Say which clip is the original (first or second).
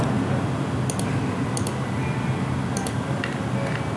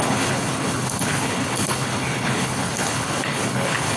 first